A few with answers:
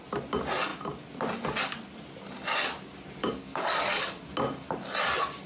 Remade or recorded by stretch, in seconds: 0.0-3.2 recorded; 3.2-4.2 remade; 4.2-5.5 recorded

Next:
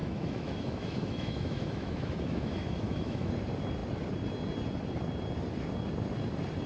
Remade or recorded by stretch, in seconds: 0.0-3.3 remade; 3.3-6.7 recorded

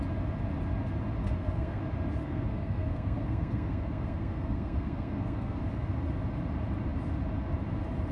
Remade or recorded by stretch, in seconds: 0.0-1.2 recorded; 1.2-1.8 remade; 1.8-2.2 recorded; 2.2-5.6 remade; 5.6-8.1 recorded

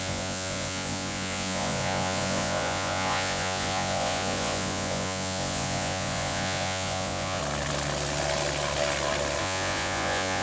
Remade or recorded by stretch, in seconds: 0.0-7.4 remade; 7.4-9.4 recorded; 9.4-10.4 remade

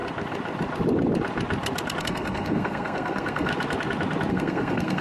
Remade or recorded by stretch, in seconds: 0.0-2.0 recorded; 2.0-3.5 remade; 3.5-4.3 recorded; 4.3-5.0 remade

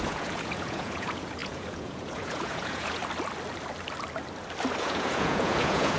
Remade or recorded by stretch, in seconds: 0.0-3.0 remade; 3.0-4.8 recorded; 4.8-6.0 remade

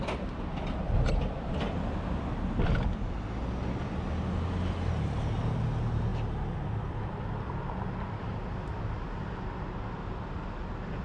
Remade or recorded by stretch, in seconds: 0.0-11.0 recorded